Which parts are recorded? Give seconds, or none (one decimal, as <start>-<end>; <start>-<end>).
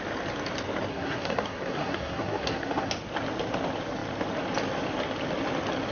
0.0-0.9; 2.9-5.9